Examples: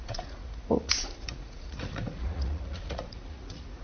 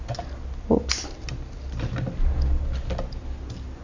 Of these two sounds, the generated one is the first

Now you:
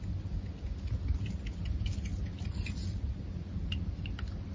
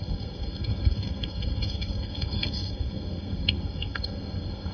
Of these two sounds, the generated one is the second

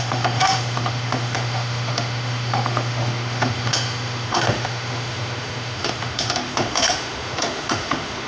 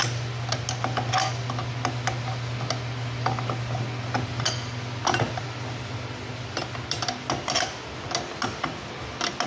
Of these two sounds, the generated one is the first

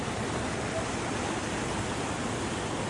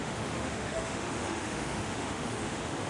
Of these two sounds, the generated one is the second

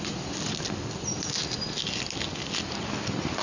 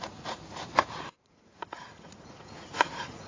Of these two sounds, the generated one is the second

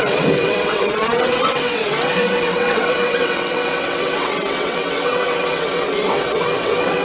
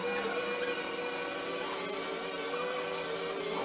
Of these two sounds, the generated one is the first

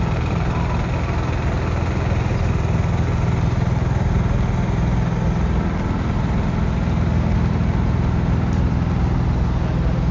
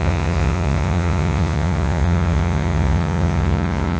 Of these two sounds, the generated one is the second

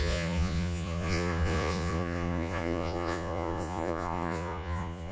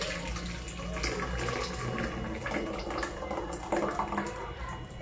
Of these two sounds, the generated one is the first